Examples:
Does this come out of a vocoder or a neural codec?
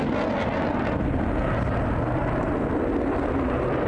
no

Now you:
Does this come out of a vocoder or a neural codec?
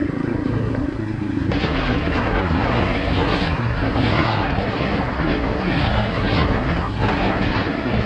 yes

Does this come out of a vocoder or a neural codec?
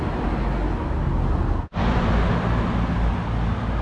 no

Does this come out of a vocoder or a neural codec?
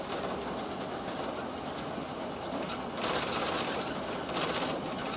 no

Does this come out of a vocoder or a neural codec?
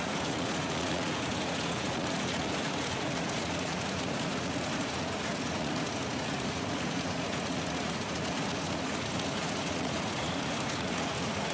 yes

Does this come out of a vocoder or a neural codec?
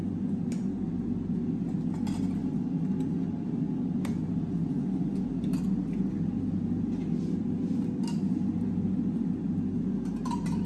no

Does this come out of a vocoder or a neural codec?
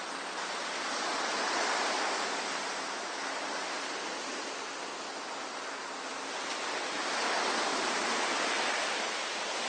no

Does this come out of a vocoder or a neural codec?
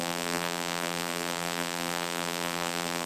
yes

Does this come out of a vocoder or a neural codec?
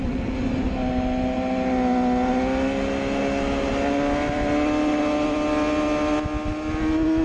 no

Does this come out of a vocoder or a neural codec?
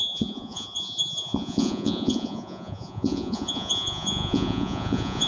yes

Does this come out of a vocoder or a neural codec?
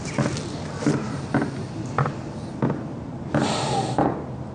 no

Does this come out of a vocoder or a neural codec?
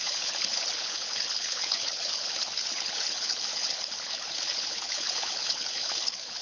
yes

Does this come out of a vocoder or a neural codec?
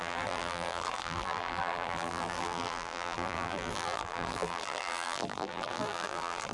yes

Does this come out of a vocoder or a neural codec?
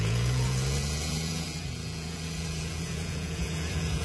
yes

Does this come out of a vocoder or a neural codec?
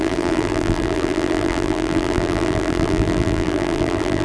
yes